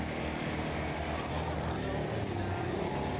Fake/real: real